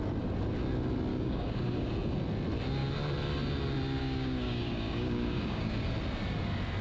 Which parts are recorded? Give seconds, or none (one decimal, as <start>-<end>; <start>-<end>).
0.0-1.1; 1.9-4.0; 5.9-6.8